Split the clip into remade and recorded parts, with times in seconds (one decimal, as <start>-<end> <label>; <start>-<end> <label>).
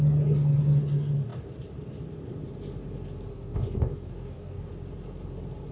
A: 0.0-3.3 recorded; 3.3-4.7 remade; 4.7-5.7 recorded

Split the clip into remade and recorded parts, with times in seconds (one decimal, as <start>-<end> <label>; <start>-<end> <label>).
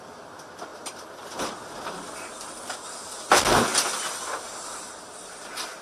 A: 0.0-0.7 recorded; 0.7-1.5 remade; 1.5-4.3 recorded; 4.3-5.8 remade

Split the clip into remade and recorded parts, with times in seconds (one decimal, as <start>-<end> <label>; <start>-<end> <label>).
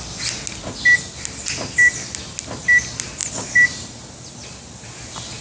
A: 0.0-5.4 recorded